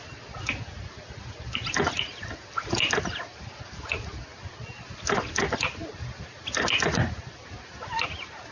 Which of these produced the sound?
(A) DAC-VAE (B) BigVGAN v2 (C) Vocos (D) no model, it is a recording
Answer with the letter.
D